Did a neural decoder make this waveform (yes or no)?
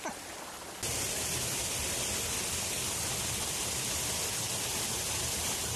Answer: no